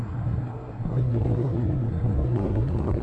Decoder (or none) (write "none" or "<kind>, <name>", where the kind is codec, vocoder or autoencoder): codec, SNAC